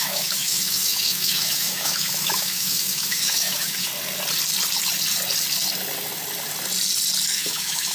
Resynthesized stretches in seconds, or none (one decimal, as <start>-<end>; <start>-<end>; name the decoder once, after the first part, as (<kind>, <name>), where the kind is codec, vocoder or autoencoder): 0.0-3.9 (autoencoder, DAC-VAE); 7.3-7.9